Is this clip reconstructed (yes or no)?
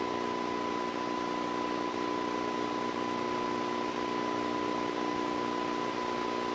no